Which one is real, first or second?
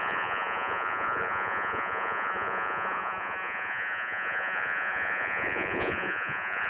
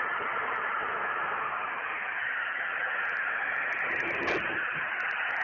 second